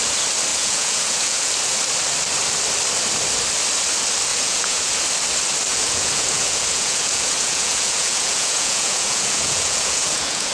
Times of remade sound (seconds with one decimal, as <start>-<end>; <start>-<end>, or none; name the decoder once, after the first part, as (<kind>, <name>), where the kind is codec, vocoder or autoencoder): 0.5-1.5 (vocoder, Vocos); 4.3-5.0; 5.7-10.5